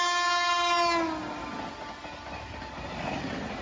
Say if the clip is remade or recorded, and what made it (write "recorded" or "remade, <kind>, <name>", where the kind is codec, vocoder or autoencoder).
recorded